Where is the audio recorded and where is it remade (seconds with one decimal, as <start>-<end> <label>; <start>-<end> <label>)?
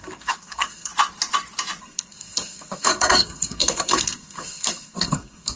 0.0-0.9 remade; 0.9-1.8 recorded; 1.8-5.6 remade